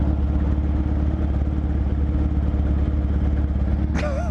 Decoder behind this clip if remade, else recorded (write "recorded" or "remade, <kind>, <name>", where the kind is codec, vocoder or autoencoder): recorded